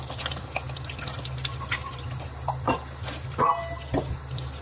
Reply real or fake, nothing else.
real